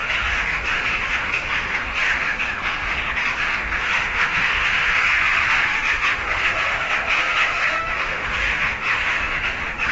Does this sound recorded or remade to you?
remade